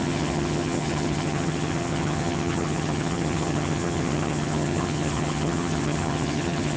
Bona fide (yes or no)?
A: no